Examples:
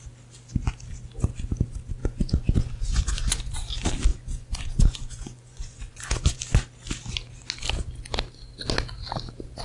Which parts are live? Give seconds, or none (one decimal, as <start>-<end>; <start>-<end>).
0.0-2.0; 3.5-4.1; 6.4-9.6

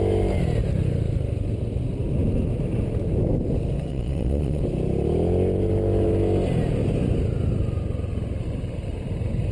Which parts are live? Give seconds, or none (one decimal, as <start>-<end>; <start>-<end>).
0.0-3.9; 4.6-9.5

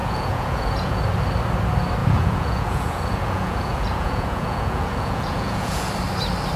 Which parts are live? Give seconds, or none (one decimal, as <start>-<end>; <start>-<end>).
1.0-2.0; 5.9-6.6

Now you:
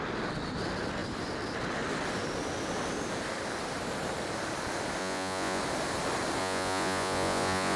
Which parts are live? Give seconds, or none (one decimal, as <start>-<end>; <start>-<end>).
0.0-5.0; 5.6-6.4

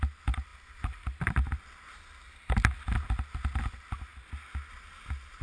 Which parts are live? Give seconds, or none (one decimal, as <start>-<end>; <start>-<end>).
0.0-5.4

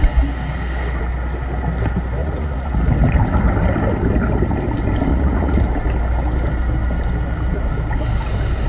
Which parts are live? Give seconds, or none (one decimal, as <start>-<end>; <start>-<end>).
0.0-2.2; 2.7-5.1; 5.6-8.7

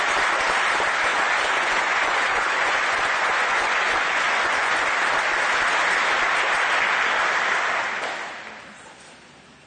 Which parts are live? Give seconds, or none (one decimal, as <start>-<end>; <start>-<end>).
0.0-1.1; 4.9-9.7

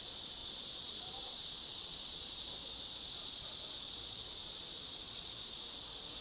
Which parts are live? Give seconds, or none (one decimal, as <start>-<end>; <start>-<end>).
0.0-0.4; 2.4-4.4; 5.3-6.2